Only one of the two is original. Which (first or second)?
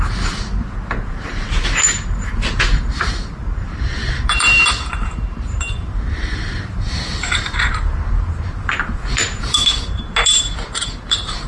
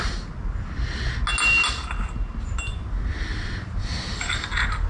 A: second